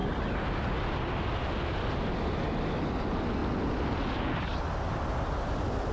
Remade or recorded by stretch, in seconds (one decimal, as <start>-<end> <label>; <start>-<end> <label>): 0.0-5.9 recorded